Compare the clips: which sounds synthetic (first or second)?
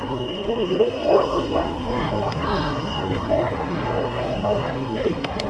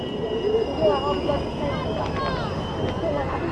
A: first